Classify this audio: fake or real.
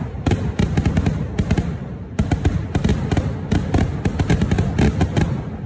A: real